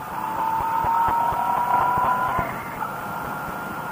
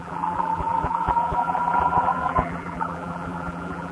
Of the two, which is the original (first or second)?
first